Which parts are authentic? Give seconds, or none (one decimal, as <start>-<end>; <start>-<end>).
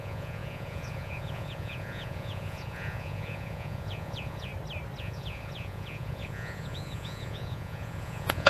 4.5-5.0